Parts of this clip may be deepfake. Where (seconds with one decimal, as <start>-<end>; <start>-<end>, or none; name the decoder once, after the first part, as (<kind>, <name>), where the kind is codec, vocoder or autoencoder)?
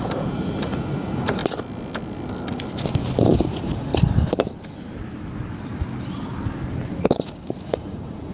0.0-1.4 (vocoder, Vocos); 3.5-3.9; 7.0-8.3